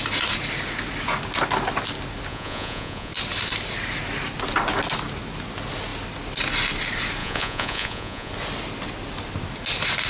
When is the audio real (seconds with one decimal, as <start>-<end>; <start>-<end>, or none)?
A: 0.0-2.3; 3.1-7.2; 8.3-10.1